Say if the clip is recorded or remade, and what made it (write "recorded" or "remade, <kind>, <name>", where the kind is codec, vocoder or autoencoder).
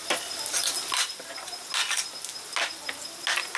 recorded